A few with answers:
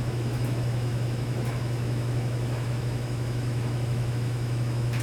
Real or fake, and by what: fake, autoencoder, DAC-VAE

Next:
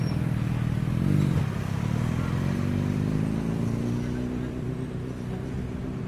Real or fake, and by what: real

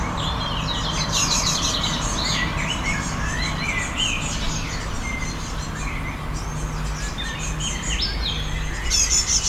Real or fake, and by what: real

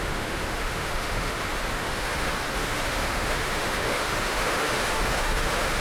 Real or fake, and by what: fake, autoencoder, DAC-VAE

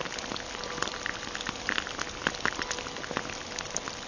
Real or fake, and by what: real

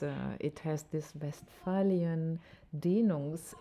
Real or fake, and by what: real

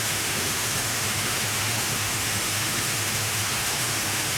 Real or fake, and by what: fake, autoencoder, DAC-VAE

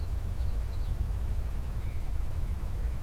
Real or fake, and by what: fake, autoencoder, DAC-VAE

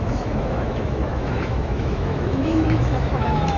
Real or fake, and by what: fake, autoencoder, DAC-VAE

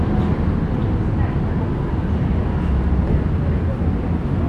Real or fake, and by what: real